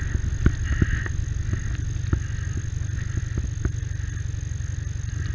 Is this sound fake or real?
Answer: real